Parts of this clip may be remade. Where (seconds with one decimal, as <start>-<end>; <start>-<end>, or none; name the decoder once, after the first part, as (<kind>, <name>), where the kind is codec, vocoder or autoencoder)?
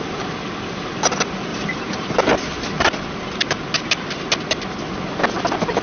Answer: 1.5-2.1 (vocoder, BigVGAN v2)